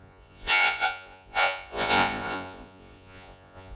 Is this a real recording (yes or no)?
no